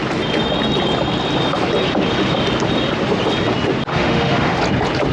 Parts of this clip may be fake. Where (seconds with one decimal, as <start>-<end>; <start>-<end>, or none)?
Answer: 3.9-4.6